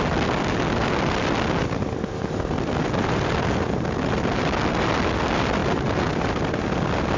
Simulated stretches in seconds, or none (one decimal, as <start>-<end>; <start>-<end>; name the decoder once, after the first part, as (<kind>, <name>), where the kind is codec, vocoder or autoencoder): none